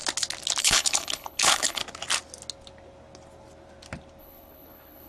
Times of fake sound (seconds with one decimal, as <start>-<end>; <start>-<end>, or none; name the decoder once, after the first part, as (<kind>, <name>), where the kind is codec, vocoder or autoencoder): 0.6-1.8 (codec, HILCodec); 4.2-5.1